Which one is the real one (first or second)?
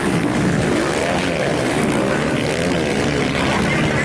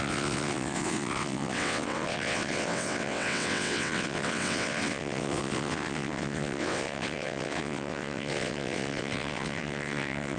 first